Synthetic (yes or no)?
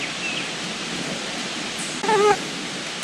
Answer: no